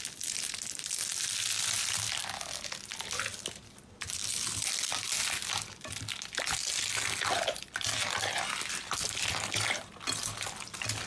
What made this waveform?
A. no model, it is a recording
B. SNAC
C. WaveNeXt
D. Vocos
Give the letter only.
A